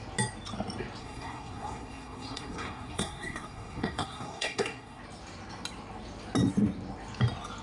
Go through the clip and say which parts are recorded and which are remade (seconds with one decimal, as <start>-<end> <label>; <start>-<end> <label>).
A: 0.0-1.0 recorded; 1.0-5.0 remade; 5.0-7.6 recorded